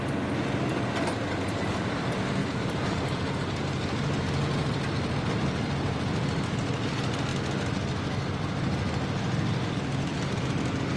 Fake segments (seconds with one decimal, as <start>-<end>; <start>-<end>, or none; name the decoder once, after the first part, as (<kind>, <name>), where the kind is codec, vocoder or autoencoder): 2.4-3.5 (vocoder, BigVGAN v2)